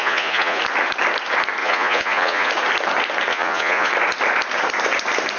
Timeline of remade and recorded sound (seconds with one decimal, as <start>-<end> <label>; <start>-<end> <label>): 0.0-0.6 remade; 0.6-1.6 recorded; 1.6-2.5 remade; 2.5-3.3 recorded; 3.3-3.9 remade; 3.9-5.4 recorded